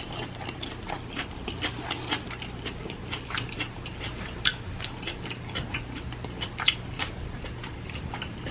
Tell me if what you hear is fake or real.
real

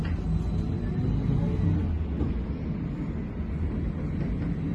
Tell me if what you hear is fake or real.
real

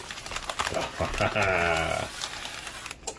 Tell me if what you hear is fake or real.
real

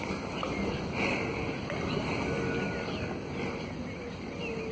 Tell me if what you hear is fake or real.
real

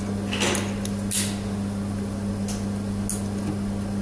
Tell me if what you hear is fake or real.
real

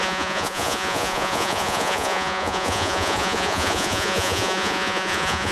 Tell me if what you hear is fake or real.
fake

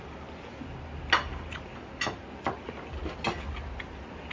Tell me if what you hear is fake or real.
real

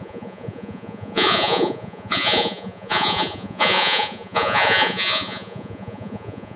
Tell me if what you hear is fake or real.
fake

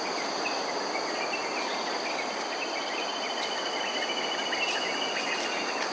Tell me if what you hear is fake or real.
real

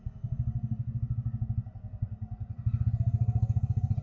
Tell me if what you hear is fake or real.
real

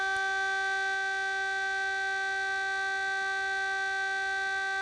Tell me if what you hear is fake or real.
real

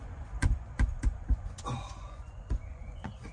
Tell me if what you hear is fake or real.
fake